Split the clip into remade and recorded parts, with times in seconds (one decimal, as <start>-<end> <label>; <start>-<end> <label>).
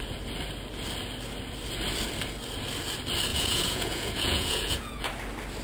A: 0.0-3.3 recorded; 3.3-5.1 remade; 5.1-5.6 recorded